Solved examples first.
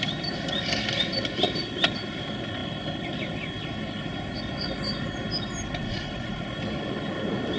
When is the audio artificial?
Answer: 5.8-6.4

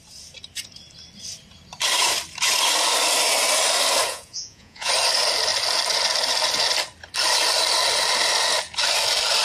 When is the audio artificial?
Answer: 4.1-4.9

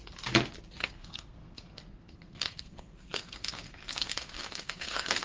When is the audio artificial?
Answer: 0.8-5.2

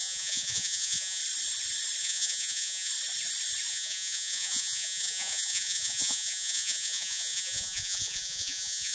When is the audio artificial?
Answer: 0.0-1.2; 2.0-2.9; 3.7-8.9

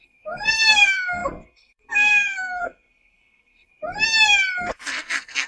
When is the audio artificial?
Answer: 0.0-3.7; 4.7-5.5

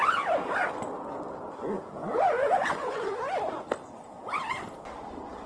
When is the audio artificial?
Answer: 2.0-3.2

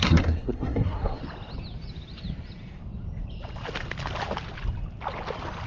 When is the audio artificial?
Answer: 0.0-1.2